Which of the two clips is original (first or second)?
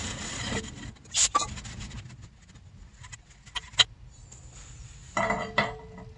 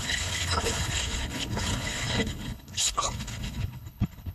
first